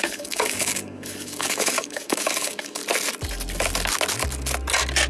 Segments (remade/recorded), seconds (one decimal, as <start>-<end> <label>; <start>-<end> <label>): 0.0-2.8 remade; 2.8-5.1 recorded